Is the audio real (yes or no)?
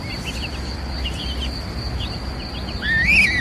yes